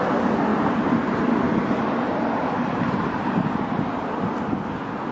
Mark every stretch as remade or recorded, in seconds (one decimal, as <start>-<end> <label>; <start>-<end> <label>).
0.0-0.5 recorded; 0.5-3.6 remade; 3.6-5.1 recorded